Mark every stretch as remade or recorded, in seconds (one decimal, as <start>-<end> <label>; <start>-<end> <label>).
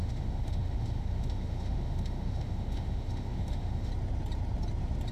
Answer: 0.0-3.9 remade; 3.9-5.1 recorded